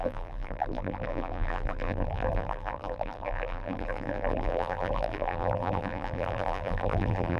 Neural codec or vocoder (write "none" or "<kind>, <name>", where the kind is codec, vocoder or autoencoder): vocoder, BigVGAN v2